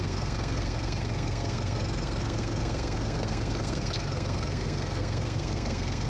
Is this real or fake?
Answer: fake